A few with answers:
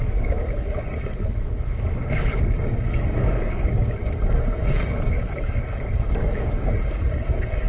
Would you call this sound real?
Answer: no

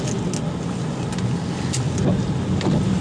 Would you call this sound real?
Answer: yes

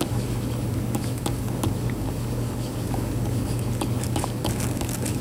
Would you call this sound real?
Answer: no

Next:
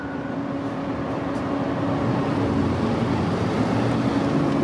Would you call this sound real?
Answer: yes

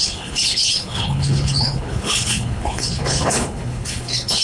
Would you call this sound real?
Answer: no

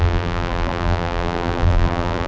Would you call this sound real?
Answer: no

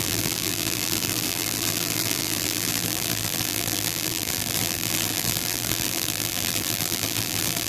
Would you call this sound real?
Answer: no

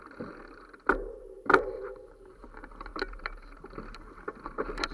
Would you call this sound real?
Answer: no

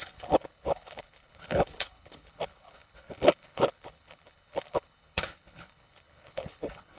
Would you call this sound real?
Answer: no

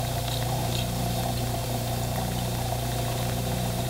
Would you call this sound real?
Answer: no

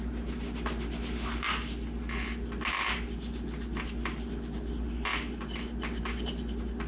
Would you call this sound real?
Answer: yes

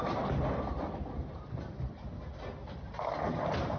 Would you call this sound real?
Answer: yes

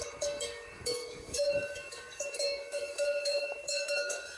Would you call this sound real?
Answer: no